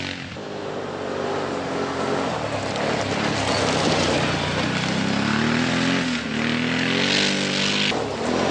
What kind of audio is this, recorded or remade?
recorded